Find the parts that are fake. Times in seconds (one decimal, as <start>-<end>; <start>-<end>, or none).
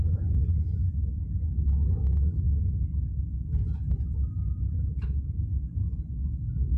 0.0-0.8; 4.9-5.5; 6.1-6.8